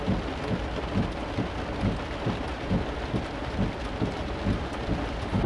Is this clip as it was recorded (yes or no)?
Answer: yes